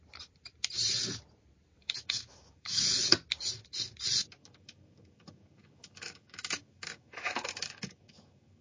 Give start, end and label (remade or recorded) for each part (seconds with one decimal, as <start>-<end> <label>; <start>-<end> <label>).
0.0-1.8 recorded; 1.8-2.9 remade; 2.9-4.4 recorded; 4.4-8.6 remade